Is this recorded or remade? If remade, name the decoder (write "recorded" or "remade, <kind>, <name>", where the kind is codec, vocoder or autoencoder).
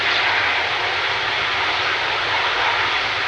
recorded